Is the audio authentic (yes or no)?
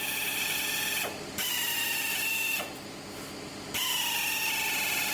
yes